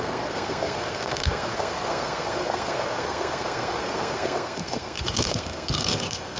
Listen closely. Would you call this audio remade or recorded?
remade